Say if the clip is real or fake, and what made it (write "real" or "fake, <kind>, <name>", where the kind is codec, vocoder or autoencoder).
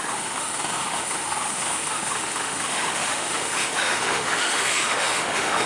fake, autoencoder, DAC-VAE